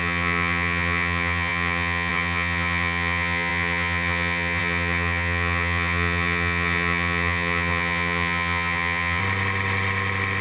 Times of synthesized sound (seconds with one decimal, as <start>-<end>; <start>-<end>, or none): 0.0-9.2